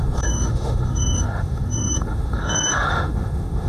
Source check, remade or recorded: remade